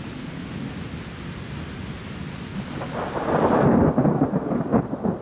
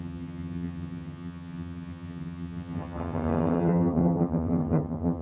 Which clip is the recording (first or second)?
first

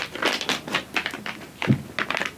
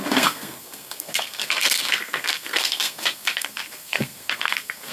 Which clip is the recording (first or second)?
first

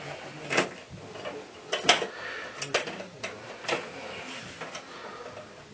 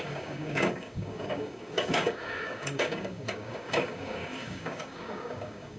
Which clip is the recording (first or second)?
first